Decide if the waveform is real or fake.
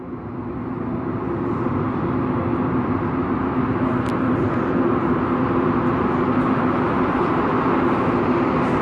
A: real